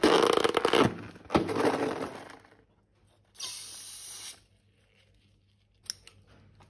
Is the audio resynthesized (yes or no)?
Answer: no